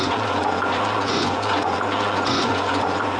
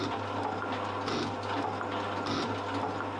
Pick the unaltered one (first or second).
second